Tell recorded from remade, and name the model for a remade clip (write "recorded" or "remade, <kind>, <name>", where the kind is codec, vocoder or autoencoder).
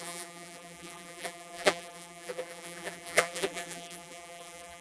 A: remade, vocoder, BigVGAN v2